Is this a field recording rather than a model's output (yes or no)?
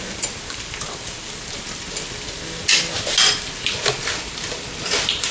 yes